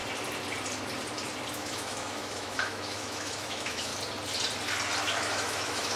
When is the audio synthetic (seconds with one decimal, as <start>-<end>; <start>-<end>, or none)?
1.5-3.9; 5.0-6.0